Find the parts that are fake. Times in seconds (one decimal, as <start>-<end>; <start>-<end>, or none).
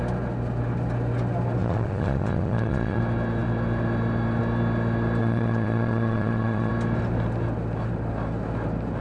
1.6-3.0; 5.2-6.7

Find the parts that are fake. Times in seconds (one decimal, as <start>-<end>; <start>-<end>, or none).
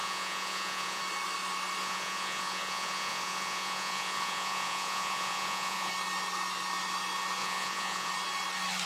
0.0-1.0; 1.8-5.9; 7.4-8.1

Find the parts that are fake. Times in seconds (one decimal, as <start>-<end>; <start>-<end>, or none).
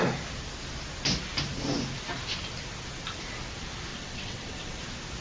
3.9-4.8